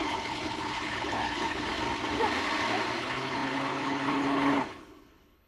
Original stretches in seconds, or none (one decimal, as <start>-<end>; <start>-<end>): 1.7-3.0